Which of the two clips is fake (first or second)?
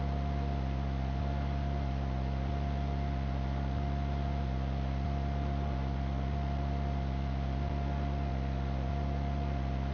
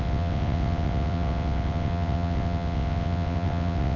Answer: second